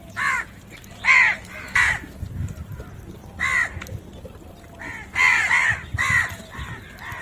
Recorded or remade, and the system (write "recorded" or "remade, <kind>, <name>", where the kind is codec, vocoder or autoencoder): recorded